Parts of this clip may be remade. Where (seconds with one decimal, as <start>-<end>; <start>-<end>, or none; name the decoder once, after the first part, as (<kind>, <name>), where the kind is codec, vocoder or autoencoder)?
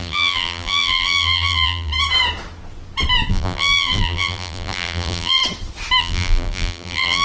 0.0-1.9 (vocoder, BigVGAN v2); 3.3-5.4; 6.0-7.2